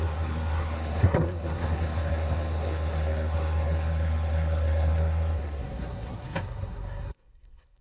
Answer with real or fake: fake